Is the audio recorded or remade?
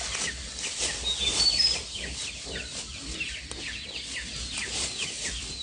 recorded